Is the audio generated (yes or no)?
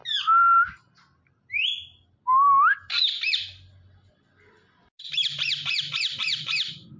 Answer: no